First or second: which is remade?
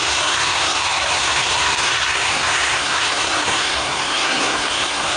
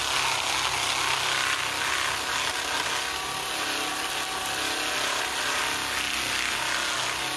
first